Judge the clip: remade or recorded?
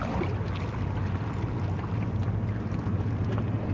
recorded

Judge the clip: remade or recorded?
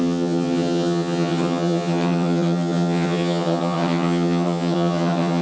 remade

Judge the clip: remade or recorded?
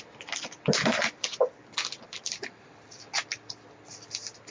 recorded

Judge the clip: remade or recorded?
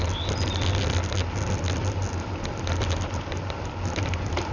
recorded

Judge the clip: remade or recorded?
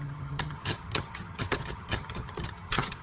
remade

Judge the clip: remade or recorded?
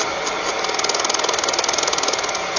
recorded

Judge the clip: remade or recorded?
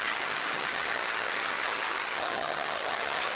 remade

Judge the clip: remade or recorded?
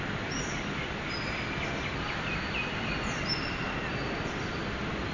recorded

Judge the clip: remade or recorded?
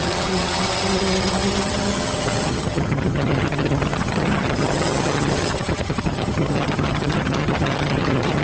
remade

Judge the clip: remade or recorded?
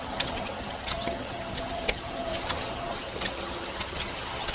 remade